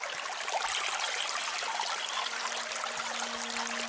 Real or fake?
real